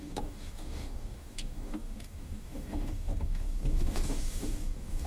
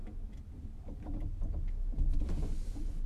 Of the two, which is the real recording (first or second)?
second